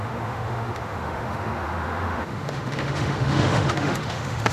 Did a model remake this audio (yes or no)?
yes